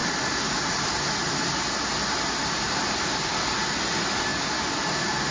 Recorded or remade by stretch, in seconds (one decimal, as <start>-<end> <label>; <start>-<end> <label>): 0.0-5.3 recorded